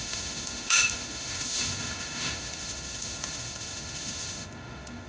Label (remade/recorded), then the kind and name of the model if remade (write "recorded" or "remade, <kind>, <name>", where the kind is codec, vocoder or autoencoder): remade, autoencoder, DAC-VAE